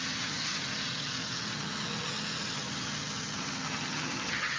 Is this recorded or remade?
remade